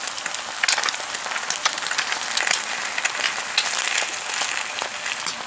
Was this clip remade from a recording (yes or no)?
no